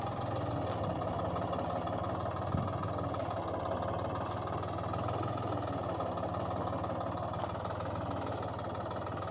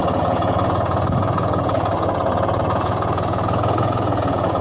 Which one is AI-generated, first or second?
second